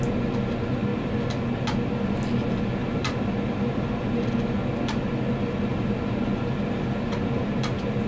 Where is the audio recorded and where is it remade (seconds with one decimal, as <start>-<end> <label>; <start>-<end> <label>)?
0.0-2.8 recorded; 2.8-4.3 remade; 4.3-8.1 recorded

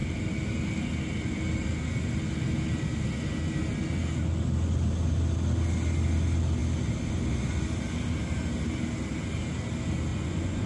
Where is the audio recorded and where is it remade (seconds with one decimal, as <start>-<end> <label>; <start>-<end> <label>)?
0.0-10.1 recorded; 10.1-10.7 remade